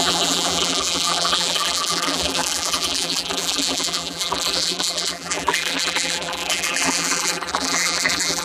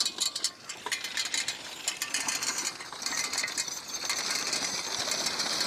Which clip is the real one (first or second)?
second